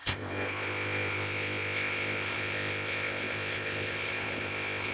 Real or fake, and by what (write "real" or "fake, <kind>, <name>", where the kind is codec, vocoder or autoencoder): fake, codec, ZipCodec